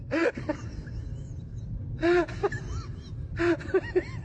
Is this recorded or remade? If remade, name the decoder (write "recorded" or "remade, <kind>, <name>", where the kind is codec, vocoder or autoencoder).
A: recorded